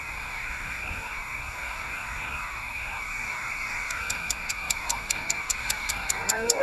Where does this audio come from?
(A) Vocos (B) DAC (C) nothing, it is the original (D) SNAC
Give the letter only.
B